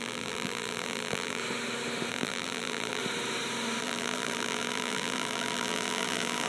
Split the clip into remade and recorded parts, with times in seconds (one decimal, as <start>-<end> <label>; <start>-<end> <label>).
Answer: 0.0-1.4 remade; 1.4-2.1 recorded; 2.1-3.0 remade; 3.0-3.8 recorded; 3.8-6.5 remade